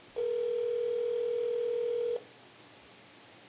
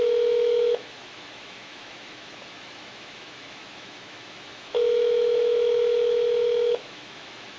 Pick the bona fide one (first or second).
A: first